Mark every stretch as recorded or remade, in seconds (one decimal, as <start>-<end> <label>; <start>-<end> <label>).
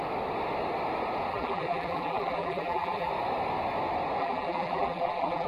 0.0-1.3 recorded; 1.3-3.1 remade; 3.1-4.2 recorded; 4.2-5.5 remade